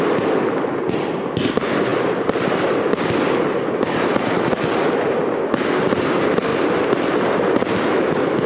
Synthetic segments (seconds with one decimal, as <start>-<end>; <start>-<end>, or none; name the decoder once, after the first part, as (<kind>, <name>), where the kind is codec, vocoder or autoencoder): 1.9-3.9 (vocoder, BigVGAN v2)